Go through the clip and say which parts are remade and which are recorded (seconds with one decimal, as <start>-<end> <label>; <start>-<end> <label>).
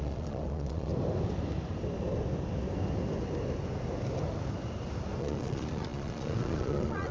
0.0-0.9 remade; 0.9-5.2 recorded; 5.2-7.1 remade